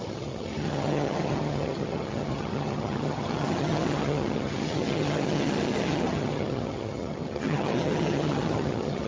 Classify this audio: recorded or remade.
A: remade